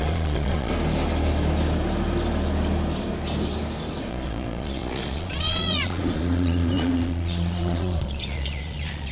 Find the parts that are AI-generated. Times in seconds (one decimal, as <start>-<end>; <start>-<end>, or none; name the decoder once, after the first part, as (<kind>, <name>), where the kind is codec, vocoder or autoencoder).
0.0-0.7 (vocoder, Vocos); 4.1-9.1